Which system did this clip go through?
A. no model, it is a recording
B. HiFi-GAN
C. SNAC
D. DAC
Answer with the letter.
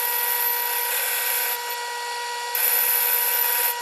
A